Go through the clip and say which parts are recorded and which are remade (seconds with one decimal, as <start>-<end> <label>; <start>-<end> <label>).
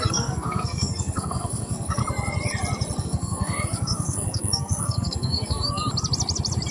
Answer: 0.0-2.0 remade; 2.0-3.0 recorded; 3.0-5.9 remade; 5.9-6.7 recorded